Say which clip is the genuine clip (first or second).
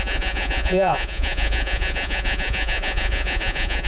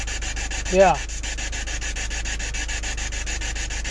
second